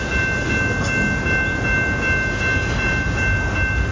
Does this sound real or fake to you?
real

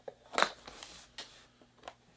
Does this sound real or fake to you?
real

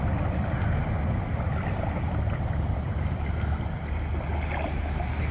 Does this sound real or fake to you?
real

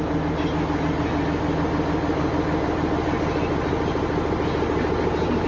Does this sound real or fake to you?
real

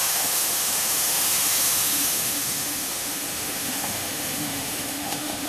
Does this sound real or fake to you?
fake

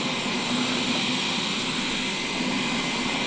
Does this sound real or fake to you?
real